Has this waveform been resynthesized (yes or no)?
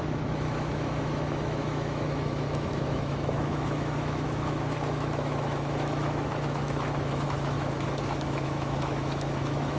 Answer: yes